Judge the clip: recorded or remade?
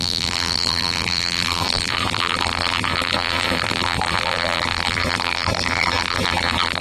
remade